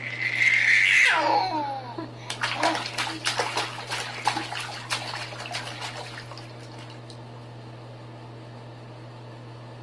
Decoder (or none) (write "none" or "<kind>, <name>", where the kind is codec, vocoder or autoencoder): none